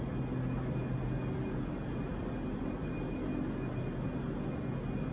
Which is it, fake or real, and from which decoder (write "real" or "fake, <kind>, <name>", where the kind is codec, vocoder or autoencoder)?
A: real